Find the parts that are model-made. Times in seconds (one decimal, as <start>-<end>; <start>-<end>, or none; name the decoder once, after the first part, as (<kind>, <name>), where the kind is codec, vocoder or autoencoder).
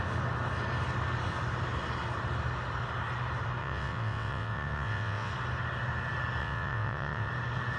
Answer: 3.6-5.3 (vocoder, WaveNeXt); 6.4-7.3